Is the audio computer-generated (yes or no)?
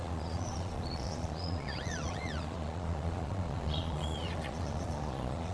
yes